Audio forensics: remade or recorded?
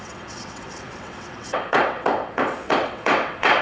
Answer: remade